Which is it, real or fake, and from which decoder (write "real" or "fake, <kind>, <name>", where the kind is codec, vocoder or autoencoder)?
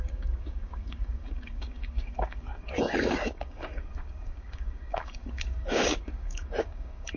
fake, codec, DAC